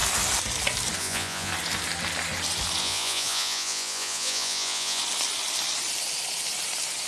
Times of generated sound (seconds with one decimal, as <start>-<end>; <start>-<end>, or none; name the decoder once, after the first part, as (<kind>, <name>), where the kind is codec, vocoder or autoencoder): 1.0-1.5 (vocoder, Vocos); 2.8-5.0